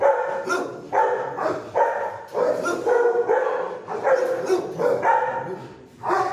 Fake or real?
fake